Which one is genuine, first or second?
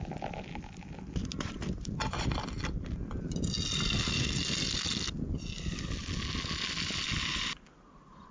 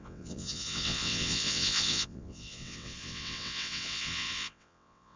first